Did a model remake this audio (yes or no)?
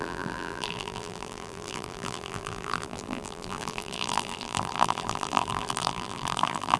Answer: yes